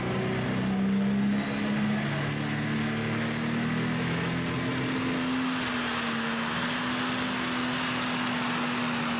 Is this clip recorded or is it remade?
recorded